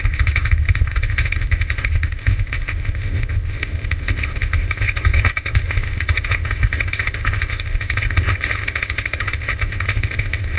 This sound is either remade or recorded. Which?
remade